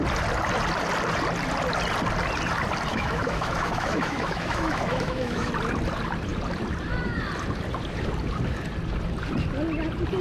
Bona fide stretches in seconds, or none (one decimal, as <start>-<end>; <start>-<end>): 0.0-2.9; 5.5-10.2